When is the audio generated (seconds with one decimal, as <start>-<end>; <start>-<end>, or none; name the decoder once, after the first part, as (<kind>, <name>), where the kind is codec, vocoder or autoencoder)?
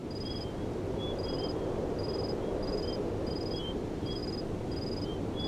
3.3-5.5 (vocoder, BigVGAN v2)